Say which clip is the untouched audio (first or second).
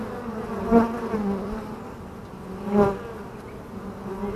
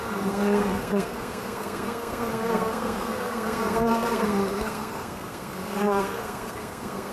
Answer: first